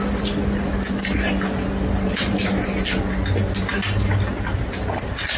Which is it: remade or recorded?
recorded